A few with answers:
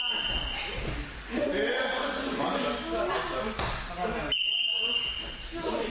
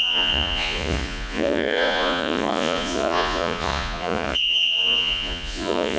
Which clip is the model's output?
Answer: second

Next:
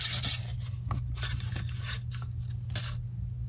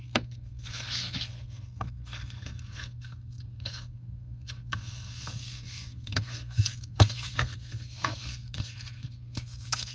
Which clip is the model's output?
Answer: second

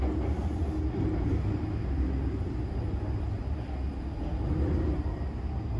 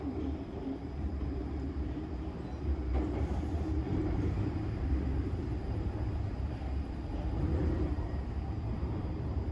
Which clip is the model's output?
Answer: second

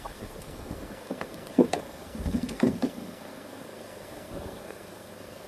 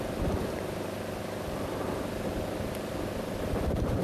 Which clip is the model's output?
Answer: first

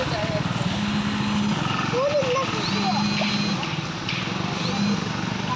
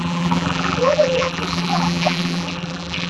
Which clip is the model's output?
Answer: second